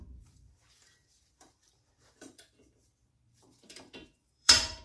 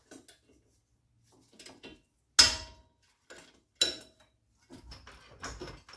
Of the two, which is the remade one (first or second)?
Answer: first